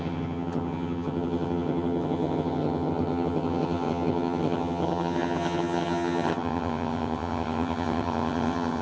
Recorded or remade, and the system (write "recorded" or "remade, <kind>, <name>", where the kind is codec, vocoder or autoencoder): remade, vocoder, HiFi-GAN